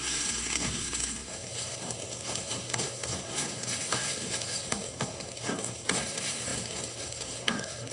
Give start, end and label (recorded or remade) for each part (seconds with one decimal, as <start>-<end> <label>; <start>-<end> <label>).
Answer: 0.0-7.9 remade